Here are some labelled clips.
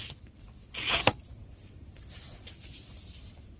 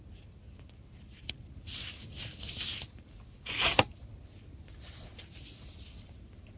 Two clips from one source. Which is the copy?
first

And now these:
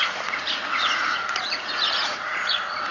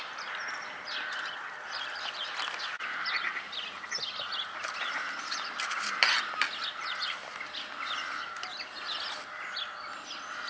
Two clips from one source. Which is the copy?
first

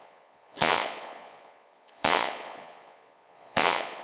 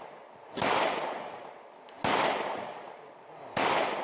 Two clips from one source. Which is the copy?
first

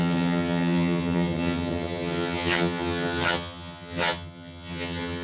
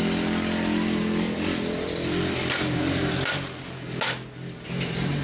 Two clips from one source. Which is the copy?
first